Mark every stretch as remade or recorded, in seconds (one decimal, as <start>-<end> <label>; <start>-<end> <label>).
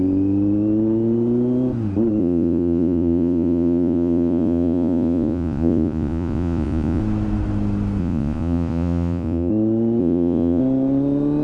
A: 0.0-2.2 recorded; 2.2-7.0 remade; 7.0-8.0 recorded; 8.0-9.5 remade; 9.5-10.0 recorded; 10.0-10.6 remade; 10.6-11.4 recorded